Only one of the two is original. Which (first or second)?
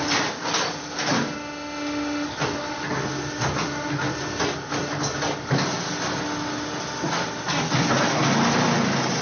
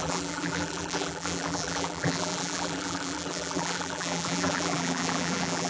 first